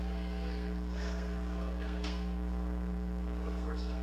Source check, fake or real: fake